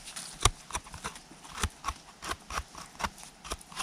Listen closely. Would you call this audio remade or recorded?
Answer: recorded